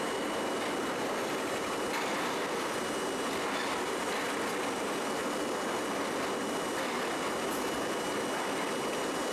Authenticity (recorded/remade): recorded